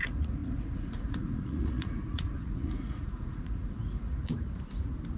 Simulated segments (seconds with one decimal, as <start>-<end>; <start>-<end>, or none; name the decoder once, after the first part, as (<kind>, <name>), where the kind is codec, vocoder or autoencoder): 0.0-4.2 (vocoder, Vocos)